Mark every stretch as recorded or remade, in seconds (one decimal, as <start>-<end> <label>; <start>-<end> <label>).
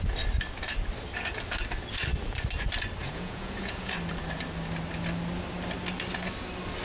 0.0-3.0 recorded; 3.0-3.9 remade; 3.9-6.8 recorded